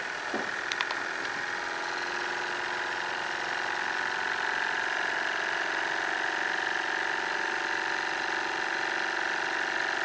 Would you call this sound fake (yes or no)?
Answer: no